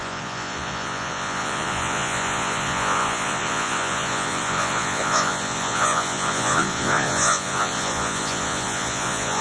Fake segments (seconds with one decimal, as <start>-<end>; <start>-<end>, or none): 0.0-9.4